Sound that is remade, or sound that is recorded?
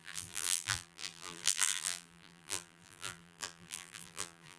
remade